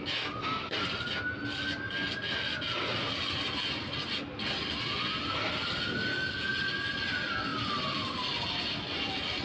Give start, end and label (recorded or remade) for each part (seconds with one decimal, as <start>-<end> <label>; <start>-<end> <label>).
0.0-9.4 recorded